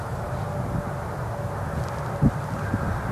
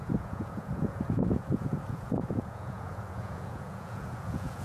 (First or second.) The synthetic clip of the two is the second